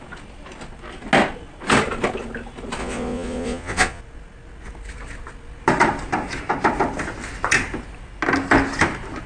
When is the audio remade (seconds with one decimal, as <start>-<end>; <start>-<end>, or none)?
2.8-4.0